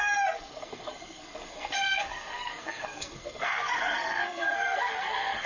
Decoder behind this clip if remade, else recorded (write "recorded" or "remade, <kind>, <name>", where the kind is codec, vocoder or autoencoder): remade, codec, SNAC